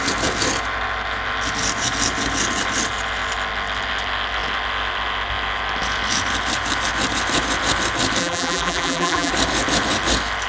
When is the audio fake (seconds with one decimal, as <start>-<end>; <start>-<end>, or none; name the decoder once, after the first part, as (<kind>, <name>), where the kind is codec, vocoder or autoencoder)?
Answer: 8.2-9.3 (vocoder, BigVGAN v2)